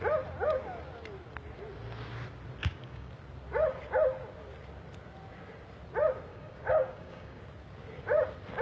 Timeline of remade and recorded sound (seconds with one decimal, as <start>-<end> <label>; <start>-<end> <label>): 0.0-2.6 recorded; 2.6-3.1 remade; 3.1-6.3 recorded; 6.3-7.4 remade; 7.4-8.6 recorded